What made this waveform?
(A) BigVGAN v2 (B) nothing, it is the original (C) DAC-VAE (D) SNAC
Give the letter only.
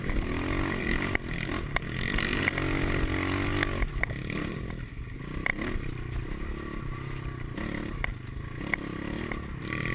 B